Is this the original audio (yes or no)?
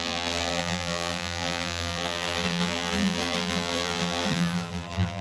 no